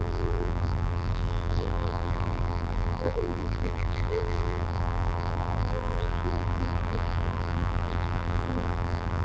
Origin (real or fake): fake